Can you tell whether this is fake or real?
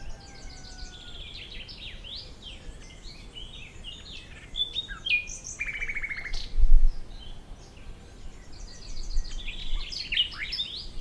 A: real